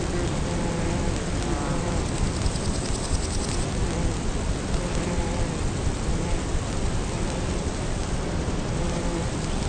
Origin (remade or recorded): recorded